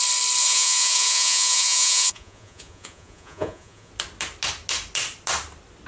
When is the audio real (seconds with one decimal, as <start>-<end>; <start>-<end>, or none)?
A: 0.0-0.4; 3.9-5.9